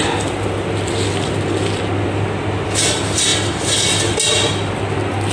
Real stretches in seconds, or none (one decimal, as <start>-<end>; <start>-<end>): 0.0-5.3